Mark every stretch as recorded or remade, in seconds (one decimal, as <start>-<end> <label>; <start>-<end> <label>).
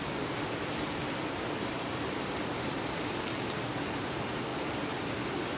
0.0-5.6 recorded